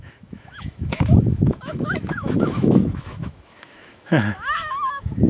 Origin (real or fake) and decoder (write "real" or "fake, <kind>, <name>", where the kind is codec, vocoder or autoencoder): fake, autoencoder, DAC-VAE